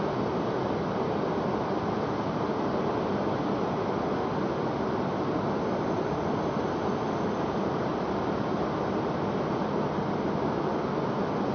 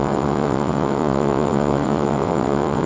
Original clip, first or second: first